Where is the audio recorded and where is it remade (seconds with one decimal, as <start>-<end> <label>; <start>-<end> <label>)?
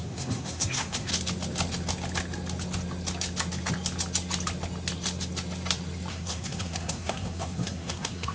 0.0-1.1 remade; 1.1-6.1 recorded; 6.1-8.3 remade